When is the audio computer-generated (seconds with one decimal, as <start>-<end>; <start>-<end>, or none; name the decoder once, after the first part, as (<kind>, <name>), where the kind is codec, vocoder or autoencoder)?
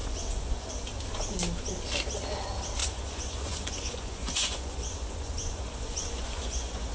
0.0-0.7 (vocoder, Vocos); 2.8-6.9